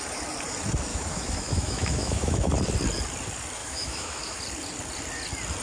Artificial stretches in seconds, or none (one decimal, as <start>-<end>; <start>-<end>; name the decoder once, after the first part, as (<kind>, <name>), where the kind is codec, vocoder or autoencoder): 0.9-2.5 (autoencoder, DAC-VAE); 3.6-4.4